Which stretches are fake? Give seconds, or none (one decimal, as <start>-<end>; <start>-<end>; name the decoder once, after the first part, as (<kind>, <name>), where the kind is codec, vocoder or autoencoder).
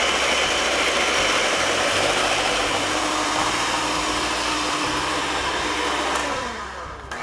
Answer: 1.4-5.7 (vocoder, BigVGAN v2); 6.2-6.8